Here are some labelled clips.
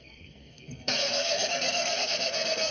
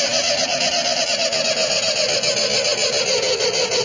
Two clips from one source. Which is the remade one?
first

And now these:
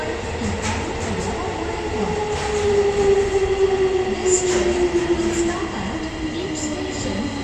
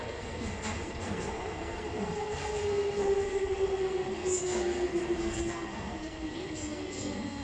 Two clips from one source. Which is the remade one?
second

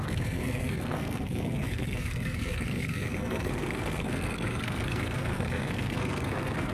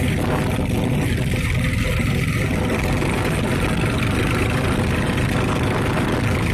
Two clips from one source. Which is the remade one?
first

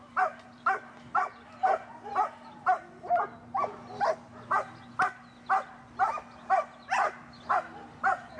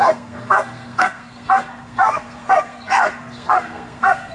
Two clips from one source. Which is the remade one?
second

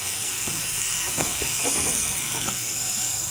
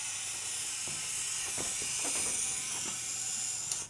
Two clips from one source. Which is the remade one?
first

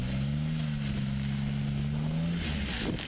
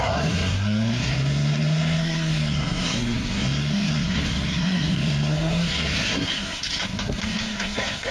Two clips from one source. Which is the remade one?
second